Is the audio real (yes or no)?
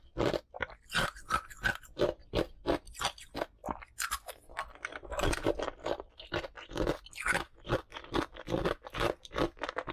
yes